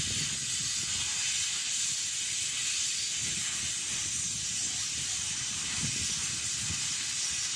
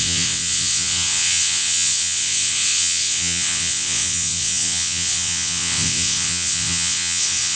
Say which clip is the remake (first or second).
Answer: second